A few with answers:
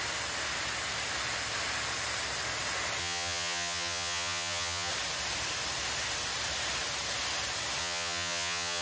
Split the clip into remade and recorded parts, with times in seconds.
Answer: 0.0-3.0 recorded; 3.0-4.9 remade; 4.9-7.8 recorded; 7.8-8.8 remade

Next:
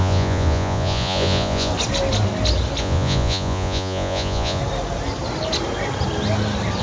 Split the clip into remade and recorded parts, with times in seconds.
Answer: 0.0-1.7 remade; 1.7-2.8 recorded; 2.8-4.6 remade; 4.6-6.8 recorded

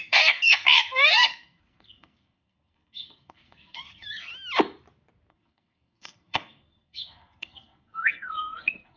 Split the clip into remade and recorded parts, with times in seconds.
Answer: 0.0-4.3 remade; 4.3-5.3 recorded; 5.3-9.0 remade

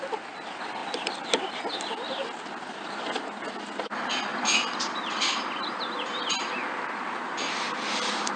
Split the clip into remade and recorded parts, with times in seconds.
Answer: 0.0-0.8 recorded; 0.8-1.3 remade; 1.3-4.3 recorded; 4.3-8.4 remade

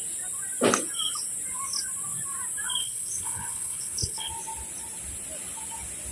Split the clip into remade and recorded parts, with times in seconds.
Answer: 0.0-2.8 recorded; 2.8-4.3 remade; 4.3-6.1 recorded

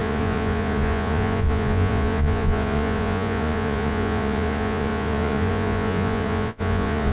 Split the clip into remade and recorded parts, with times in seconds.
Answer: 0.0-7.1 remade